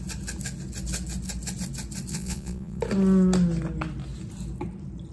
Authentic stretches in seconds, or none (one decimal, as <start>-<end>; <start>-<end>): 0.0-2.1; 2.8-5.1